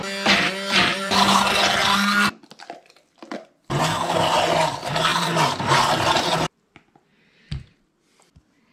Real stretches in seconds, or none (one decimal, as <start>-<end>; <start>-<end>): 0.0-0.9; 1.6-5.1; 6.4-7.1; 7.9-8.7